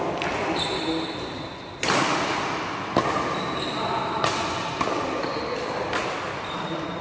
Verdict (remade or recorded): recorded